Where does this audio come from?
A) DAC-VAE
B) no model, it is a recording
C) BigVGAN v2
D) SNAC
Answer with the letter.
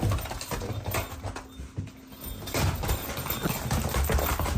B